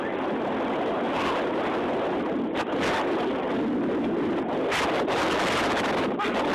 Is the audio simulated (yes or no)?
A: no